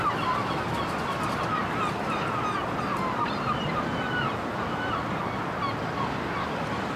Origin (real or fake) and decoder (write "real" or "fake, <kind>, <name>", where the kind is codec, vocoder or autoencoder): real